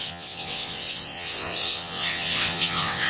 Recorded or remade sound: remade